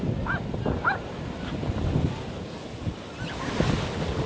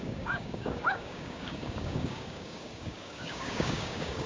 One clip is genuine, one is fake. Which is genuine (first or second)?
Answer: first